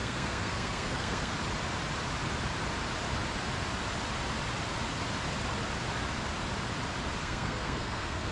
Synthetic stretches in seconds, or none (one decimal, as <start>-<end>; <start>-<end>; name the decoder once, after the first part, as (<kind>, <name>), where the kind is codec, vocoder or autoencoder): 0.0-1.3 (codec, SNAC); 7.2-8.3

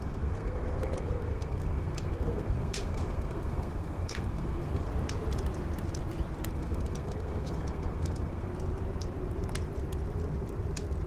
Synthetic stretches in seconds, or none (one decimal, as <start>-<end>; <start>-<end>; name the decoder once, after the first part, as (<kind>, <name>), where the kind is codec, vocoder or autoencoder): 0.0-4.9 (codec, SNAC); 6.5-8.5

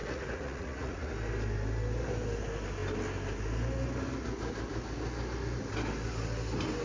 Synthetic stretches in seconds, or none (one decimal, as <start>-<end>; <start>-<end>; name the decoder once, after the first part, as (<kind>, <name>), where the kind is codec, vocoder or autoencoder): 0.0-1.1 (vocoder, Vocos)

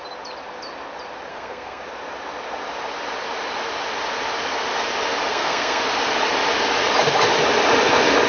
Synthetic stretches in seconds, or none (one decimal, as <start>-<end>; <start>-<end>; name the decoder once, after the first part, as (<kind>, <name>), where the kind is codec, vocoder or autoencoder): 1.3-1.8 (codec, SNAC); 5.3-5.8

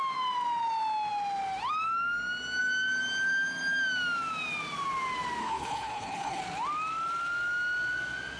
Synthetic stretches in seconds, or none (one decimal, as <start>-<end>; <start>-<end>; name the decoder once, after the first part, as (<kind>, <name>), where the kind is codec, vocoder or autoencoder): 5.4-6.4 (codec, HILCodec)

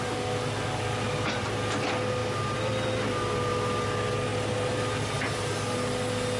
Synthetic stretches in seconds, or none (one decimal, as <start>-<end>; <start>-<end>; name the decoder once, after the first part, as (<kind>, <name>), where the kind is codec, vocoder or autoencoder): none

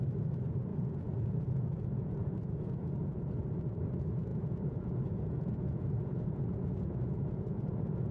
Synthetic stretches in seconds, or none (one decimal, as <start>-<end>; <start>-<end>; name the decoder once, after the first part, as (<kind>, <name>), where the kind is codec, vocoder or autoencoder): 0.7-3.5 (vocoder, Vocos); 4.3-8.1